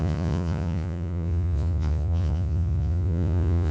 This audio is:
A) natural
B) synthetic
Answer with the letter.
B